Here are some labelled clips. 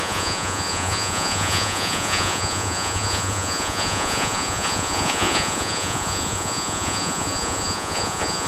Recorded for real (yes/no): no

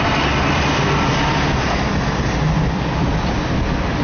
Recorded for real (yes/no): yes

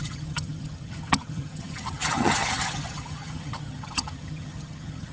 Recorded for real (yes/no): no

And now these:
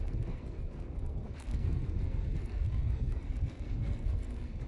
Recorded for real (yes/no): no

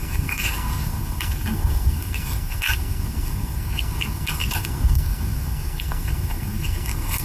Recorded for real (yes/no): no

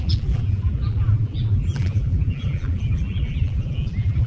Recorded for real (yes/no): no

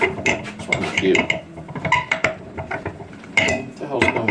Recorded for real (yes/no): no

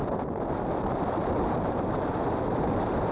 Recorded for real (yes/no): yes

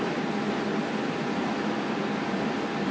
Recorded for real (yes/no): yes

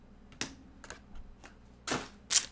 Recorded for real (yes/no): yes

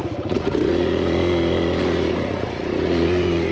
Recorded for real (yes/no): no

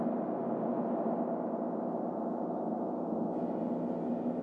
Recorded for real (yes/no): yes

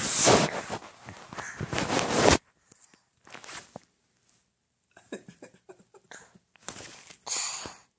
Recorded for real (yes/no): yes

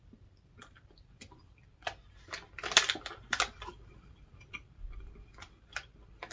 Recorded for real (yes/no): yes